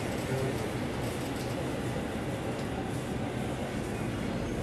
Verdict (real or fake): real